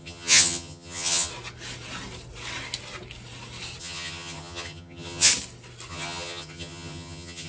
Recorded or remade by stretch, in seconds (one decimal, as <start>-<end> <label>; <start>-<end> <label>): 0.0-1.3 remade; 1.3-3.8 recorded; 3.8-5.3 remade; 5.3-5.9 recorded; 5.9-7.5 remade

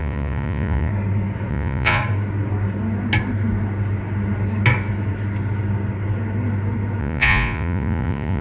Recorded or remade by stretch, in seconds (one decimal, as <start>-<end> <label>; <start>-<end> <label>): 0.0-0.9 remade; 0.9-1.5 recorded; 1.5-2.0 remade; 2.0-7.0 recorded; 7.0-8.4 remade

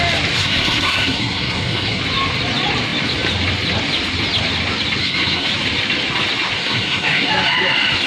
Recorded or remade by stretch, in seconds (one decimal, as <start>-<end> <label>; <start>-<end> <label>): 0.0-0.4 recorded; 0.4-2.0 remade; 2.0-5.0 recorded; 5.0-5.5 remade; 5.5-6.6 recorded; 6.6-7.3 remade; 7.3-8.1 recorded

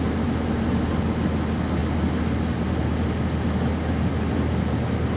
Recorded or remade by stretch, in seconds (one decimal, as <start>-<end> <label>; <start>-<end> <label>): 0.0-5.2 recorded

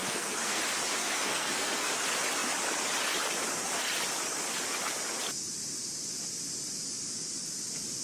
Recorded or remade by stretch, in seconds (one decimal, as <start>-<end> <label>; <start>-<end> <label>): 0.0-0.6 remade; 0.6-1.0 recorded; 1.0-1.9 remade; 1.9-8.0 recorded

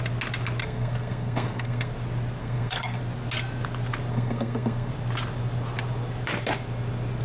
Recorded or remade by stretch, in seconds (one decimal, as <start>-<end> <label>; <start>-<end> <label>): 0.0-0.6 recorded; 0.6-1.9 remade; 1.9-2.4 recorded; 2.4-3.0 remade; 3.0-4.1 recorded; 4.1-4.9 remade; 4.9-7.2 recorded

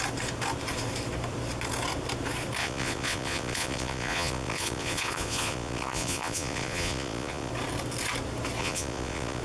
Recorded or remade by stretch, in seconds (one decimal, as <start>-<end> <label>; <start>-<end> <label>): 0.0-2.6 recorded; 2.6-7.5 remade; 7.5-8.6 recorded; 8.6-9.4 remade